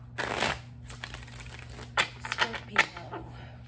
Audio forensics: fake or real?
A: real